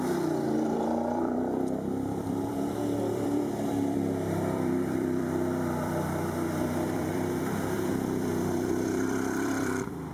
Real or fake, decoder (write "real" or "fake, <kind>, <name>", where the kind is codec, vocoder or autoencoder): fake, vocoder, BigVGAN v2